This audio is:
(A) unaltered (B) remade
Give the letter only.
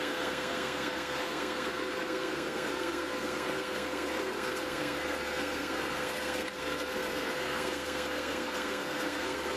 B